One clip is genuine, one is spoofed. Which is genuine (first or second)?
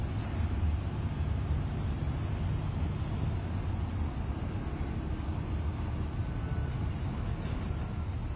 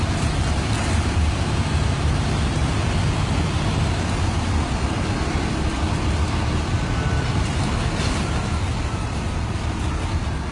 first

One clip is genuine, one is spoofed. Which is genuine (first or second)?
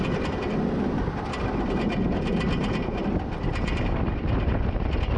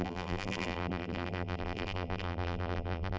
first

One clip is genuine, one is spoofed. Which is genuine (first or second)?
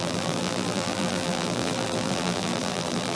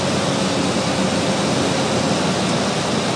second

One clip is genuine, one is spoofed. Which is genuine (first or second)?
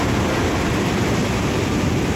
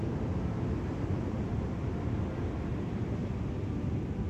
second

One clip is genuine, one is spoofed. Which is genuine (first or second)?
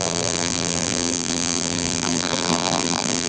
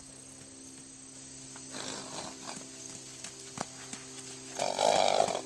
second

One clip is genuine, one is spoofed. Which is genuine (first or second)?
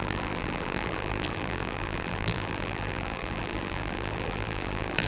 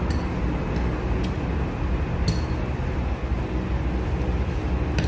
second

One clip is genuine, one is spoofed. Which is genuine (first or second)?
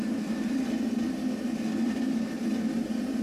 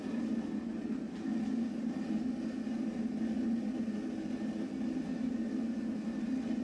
second